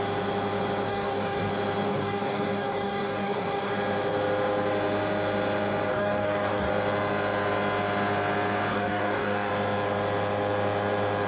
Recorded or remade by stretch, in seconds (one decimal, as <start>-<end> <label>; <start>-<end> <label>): 0.0-0.9 recorded; 0.9-1.5 remade; 1.5-1.9 recorded; 1.9-3.7 remade; 3.7-5.9 recorded; 5.9-6.7 remade; 6.7-8.7 recorded; 8.7-9.5 remade; 9.5-11.3 recorded